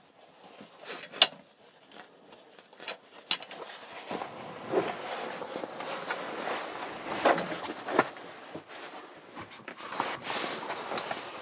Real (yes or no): yes